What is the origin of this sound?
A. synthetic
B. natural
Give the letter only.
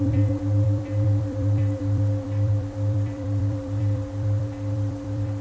A